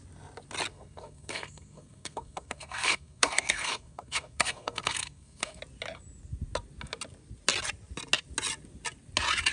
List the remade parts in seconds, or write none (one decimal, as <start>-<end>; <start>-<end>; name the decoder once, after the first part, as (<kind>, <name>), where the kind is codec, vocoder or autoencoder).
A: 0.7-5.6 (codec, SNAC)